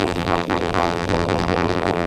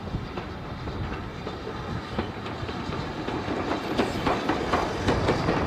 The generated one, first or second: first